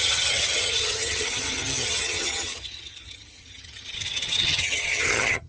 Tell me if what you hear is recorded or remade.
remade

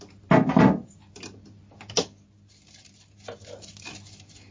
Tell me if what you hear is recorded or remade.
recorded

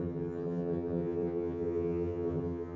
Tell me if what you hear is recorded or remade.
remade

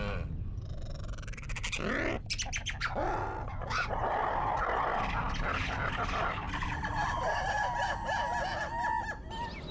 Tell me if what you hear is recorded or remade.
recorded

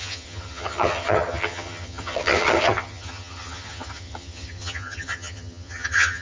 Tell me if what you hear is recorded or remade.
remade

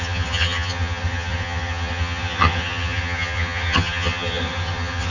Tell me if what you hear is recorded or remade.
remade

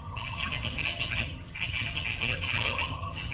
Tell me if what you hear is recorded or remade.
remade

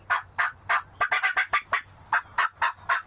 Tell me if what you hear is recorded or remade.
recorded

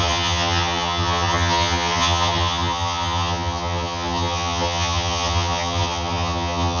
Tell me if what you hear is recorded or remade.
remade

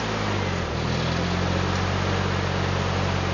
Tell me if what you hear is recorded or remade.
recorded